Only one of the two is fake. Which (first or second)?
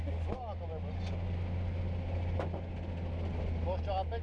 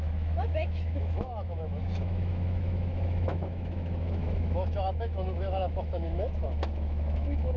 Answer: second